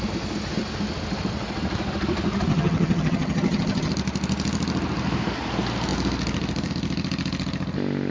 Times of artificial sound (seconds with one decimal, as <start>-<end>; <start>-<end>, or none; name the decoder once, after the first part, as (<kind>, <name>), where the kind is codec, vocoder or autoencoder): 2.5-3.9 (vocoder, HiFi-GAN)